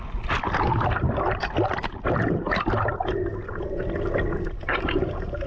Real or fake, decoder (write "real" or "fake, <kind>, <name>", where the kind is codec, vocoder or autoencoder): real